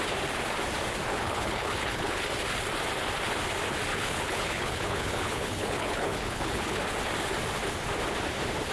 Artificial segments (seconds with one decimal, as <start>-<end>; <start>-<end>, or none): 1.1-2.2; 3.9-6.8